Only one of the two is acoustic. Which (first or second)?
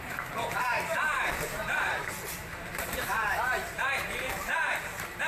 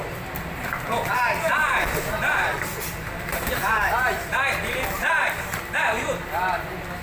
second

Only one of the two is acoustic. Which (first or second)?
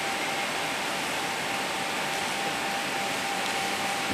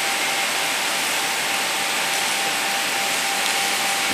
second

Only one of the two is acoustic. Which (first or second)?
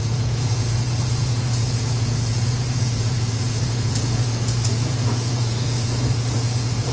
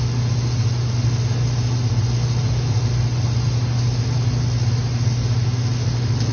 second